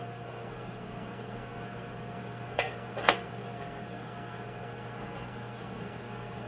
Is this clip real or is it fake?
fake